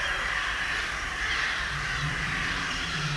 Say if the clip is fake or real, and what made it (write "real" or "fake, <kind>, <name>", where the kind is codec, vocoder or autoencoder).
fake, vocoder, BigVGAN v2